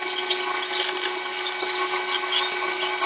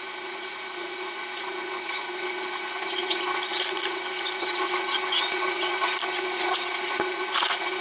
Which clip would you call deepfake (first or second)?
second